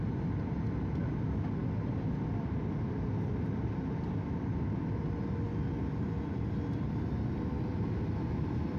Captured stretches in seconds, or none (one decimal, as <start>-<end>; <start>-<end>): 0.0-8.8